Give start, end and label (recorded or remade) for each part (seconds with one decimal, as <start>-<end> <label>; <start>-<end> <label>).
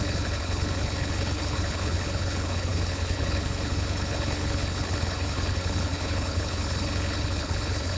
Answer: 0.0-8.0 remade